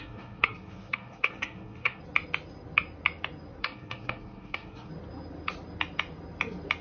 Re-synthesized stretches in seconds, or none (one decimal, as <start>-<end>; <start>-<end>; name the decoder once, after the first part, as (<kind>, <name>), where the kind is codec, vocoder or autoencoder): 0.0-2.0 (codec, SNAC); 3.6-4.9